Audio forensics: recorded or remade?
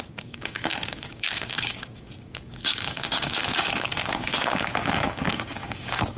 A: remade